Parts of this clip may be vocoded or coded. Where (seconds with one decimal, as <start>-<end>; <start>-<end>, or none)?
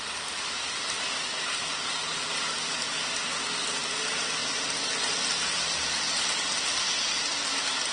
none